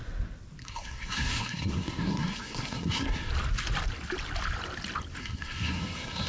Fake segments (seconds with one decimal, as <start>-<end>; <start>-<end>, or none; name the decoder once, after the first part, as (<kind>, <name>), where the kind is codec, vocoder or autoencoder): 0.6-3.3 (codec, SNAC); 5.2-6.3